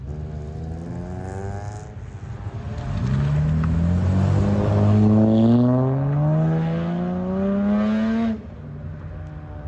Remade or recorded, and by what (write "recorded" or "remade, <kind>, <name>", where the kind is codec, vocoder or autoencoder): recorded